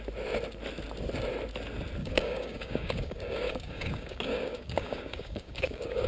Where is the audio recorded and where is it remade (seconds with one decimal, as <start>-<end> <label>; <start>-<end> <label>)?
0.0-2.0 recorded; 2.0-6.1 remade